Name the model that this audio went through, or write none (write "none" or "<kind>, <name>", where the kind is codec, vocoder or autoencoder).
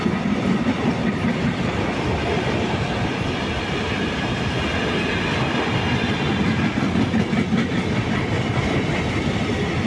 none